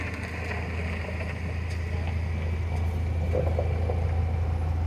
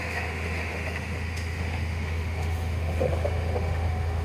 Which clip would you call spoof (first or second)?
second